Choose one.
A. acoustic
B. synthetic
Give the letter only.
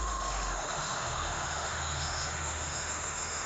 B